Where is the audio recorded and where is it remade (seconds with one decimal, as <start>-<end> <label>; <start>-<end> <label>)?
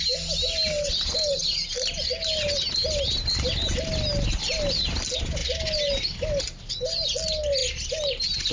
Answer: 0.0-8.5 recorded